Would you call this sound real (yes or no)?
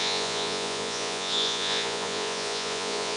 no